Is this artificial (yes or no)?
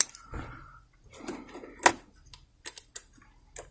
no